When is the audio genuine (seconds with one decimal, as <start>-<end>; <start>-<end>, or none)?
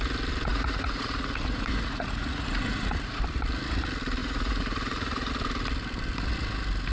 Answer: 0.0-0.5; 3.2-4.2; 5.3-6.9